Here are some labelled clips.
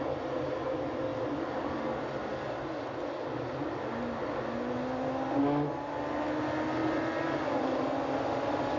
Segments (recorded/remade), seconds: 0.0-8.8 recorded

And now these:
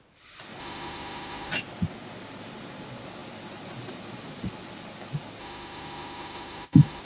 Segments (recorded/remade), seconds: 0.0-0.6 recorded; 0.6-1.5 remade; 1.5-5.4 recorded; 5.4-7.0 remade

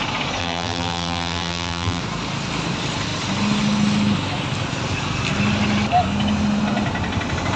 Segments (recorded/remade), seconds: 0.0-0.4 recorded; 0.4-2.0 remade; 2.0-7.6 recorded

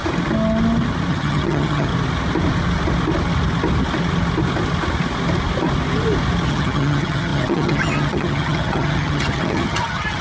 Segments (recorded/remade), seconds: 0.0-1.1 recorded; 1.1-1.9 remade; 1.9-6.5 recorded; 6.5-10.2 remade